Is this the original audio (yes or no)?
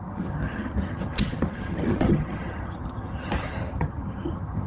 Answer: no